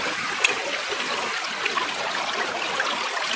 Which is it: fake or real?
real